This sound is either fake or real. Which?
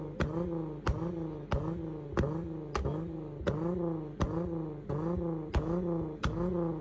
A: real